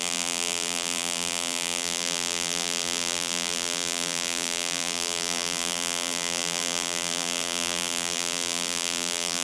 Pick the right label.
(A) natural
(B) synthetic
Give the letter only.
B